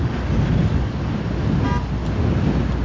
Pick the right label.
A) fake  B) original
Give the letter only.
B